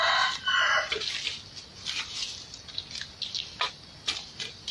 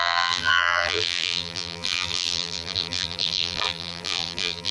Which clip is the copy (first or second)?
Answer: second